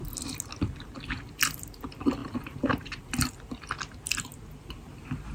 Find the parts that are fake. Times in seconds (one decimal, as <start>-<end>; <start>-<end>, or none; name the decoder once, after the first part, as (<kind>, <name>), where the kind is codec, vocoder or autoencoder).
2.2-3.1 (vocoder, BigVGAN v2)